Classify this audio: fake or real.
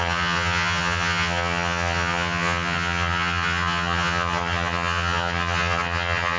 fake